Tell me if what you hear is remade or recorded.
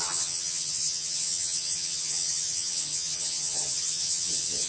remade